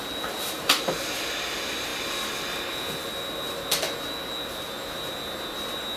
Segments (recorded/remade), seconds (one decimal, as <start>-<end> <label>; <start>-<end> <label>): 0.0-6.0 recorded

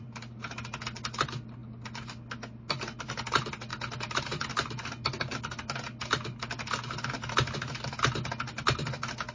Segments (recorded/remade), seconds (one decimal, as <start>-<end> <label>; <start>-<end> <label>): 0.0-9.3 recorded

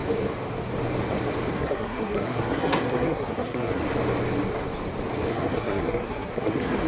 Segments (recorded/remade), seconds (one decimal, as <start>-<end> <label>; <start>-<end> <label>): 0.0-1.5 recorded; 1.5-3.8 remade; 3.8-5.3 recorded; 5.3-6.9 remade